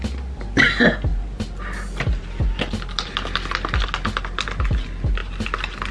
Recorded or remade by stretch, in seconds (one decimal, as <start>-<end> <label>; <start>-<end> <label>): 0.0-5.9 recorded